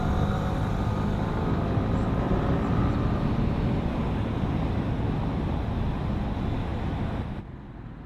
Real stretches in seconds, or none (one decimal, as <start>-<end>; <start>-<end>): 0.0-8.1